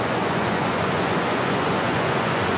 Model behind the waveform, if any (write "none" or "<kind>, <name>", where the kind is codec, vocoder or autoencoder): vocoder, Vocos